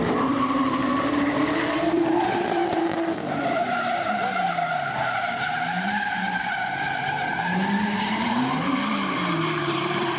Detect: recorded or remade remade